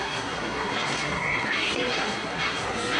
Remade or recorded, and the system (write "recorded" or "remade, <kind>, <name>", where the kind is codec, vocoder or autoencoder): remade, codec, SNAC